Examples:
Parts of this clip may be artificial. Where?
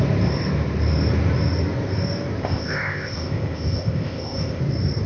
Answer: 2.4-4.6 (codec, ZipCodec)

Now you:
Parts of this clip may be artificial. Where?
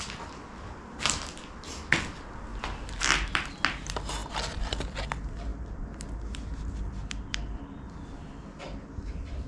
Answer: 7.0-8.2 (vocoder, BigVGAN v2)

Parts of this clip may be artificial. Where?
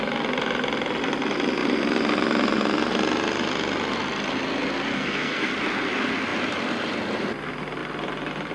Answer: 4.9-5.5 (codec, SNAC)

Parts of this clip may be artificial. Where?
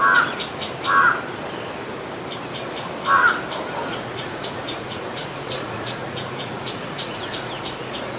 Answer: 3.9-8.2 (vocoder, Vocos)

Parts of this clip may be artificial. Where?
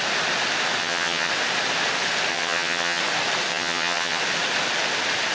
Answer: 0.8-1.3 (vocoder, HiFi-GAN); 2.3-3.0; 3.5-4.2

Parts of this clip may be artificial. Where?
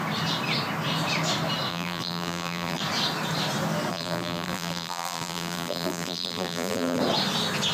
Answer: 1.7-2.8 (vocoder, BigVGAN v2); 3.9-7.0